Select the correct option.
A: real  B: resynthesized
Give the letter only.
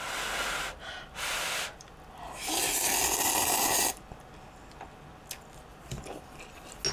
A